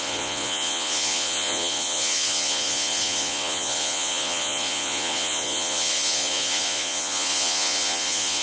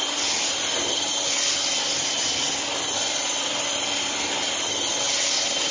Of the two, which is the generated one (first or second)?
first